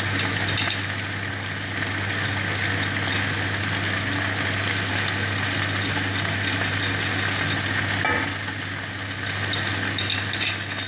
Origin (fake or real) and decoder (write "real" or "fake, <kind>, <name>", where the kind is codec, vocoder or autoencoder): real